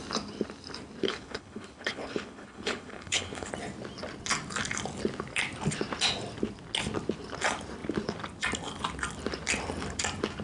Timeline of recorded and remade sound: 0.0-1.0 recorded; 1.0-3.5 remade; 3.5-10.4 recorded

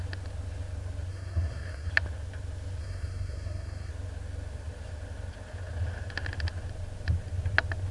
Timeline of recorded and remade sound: 0.0-1.1 recorded; 1.1-1.9 remade; 1.9-2.8 recorded; 2.8-3.9 remade; 3.9-7.9 recorded